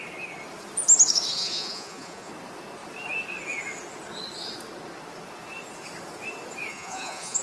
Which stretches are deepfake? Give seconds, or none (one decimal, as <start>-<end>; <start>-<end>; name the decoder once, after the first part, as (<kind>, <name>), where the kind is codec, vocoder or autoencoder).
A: 1.3-2.3 (vocoder, Vocos); 6.7-7.4